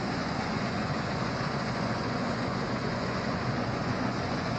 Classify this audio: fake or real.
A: fake